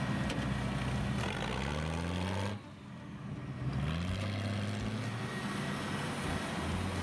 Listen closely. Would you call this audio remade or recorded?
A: recorded